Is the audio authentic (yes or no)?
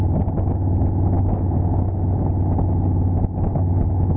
yes